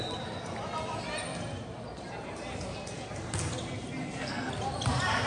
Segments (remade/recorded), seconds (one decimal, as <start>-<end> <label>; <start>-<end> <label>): 0.0-4.0 recorded; 4.0-4.5 remade; 4.5-5.3 recorded